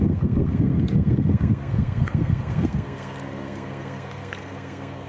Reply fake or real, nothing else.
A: fake